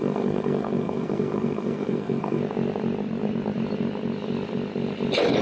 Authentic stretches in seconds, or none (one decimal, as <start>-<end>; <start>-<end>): 2.4-5.4